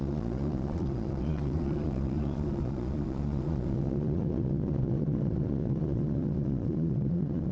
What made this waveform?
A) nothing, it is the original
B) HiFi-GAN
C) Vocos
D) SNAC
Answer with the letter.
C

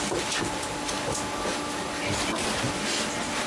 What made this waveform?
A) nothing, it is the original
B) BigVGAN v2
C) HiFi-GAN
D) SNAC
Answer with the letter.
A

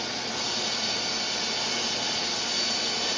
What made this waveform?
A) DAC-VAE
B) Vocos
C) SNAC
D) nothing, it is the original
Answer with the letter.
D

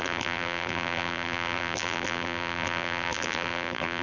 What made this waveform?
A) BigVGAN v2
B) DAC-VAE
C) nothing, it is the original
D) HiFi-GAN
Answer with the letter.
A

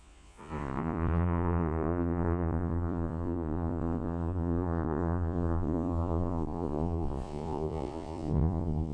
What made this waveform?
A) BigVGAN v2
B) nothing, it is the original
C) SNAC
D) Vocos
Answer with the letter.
D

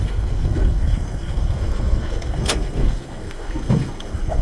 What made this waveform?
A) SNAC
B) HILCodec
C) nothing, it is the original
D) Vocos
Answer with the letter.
A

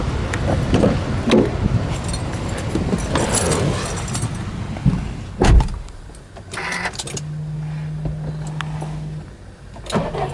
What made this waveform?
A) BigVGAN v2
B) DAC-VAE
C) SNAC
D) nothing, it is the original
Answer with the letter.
D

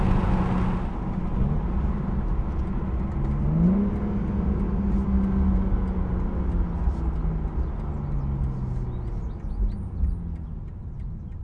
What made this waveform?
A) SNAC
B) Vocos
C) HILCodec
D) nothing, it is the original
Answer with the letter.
D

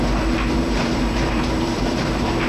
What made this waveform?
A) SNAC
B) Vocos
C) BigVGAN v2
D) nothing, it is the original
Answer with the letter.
C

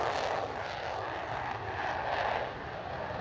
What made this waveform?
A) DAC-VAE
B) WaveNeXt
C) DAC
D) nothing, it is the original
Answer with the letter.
D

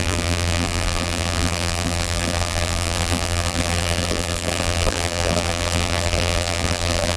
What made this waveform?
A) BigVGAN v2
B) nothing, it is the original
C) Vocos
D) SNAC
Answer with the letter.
A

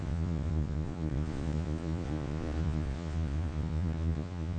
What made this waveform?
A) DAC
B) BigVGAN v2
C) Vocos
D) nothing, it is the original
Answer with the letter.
C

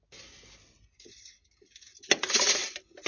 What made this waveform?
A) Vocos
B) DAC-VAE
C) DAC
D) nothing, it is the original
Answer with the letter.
D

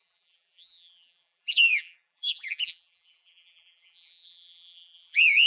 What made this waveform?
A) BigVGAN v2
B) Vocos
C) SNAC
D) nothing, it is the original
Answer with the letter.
A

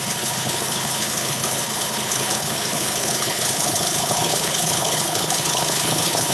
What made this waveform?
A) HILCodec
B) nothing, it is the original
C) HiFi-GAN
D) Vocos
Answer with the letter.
A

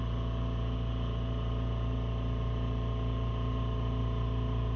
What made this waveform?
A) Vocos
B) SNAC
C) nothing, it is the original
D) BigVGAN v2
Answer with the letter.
C